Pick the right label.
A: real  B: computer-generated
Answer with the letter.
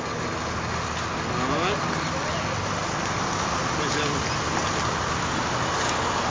A